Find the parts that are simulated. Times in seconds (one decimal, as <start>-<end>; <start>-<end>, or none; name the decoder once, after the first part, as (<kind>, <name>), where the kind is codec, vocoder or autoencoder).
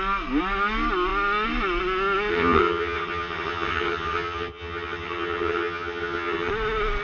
2.3-6.5 (vocoder, HiFi-GAN)